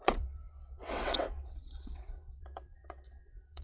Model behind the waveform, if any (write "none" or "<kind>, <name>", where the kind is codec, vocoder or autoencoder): vocoder, WaveNeXt